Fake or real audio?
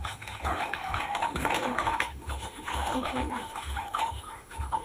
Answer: fake